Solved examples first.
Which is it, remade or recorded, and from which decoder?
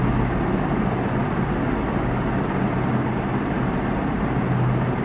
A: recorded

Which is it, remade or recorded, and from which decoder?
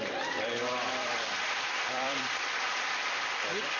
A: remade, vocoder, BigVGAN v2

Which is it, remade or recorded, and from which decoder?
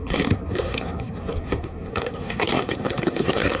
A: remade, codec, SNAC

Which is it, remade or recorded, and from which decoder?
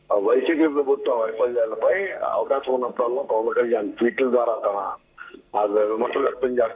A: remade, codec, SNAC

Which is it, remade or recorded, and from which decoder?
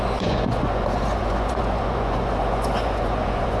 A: remade, vocoder, Vocos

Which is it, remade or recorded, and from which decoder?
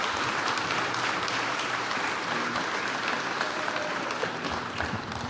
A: remade, vocoder, BigVGAN v2